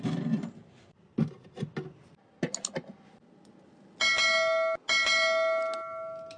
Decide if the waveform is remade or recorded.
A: recorded